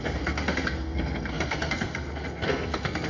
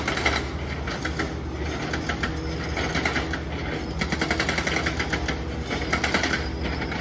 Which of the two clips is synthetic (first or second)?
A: first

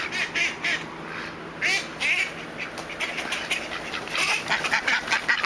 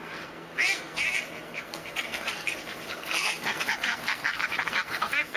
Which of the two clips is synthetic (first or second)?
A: second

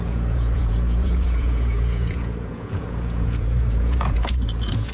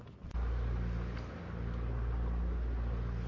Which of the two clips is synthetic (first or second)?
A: first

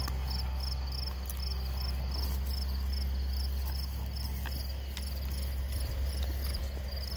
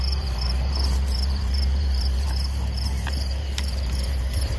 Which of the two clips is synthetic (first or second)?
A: second